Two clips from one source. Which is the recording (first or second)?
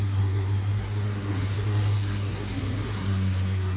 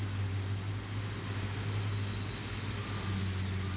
second